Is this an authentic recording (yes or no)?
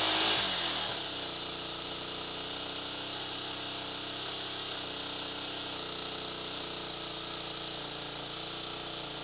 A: yes